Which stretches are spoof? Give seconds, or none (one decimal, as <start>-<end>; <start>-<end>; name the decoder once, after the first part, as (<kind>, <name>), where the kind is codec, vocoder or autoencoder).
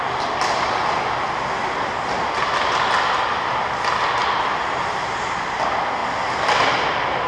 none